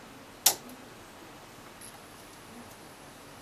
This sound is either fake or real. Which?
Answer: real